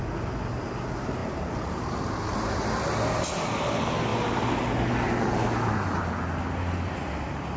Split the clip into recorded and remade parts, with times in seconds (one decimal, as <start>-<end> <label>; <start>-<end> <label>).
0.0-7.6 recorded